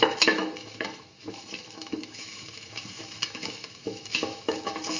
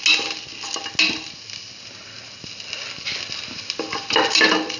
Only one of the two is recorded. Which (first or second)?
second